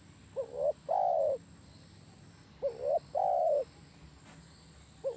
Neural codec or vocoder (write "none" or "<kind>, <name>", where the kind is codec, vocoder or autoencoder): none